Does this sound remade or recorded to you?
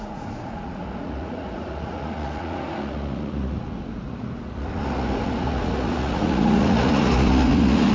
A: remade